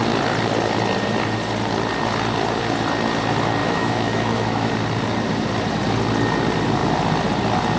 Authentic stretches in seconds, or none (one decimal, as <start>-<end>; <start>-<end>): 0.0-3.6; 4.7-7.8

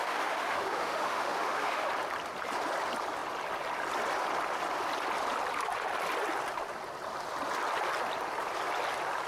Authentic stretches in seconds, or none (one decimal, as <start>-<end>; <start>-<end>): 1.9-9.3

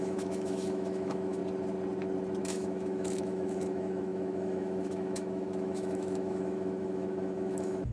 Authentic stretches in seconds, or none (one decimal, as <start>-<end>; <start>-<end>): 1.4-2.4

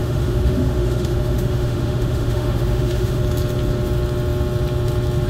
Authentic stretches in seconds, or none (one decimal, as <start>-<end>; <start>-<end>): 3.2-5.3

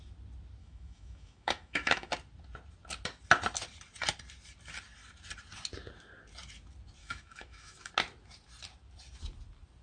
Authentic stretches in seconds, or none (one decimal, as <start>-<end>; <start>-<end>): 0.0-0.6; 2.1-7.0; 7.9-9.8

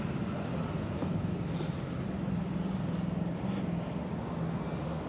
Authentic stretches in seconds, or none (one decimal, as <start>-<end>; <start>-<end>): 0.0-1.0; 1.7-5.1